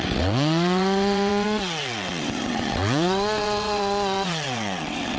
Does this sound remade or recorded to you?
remade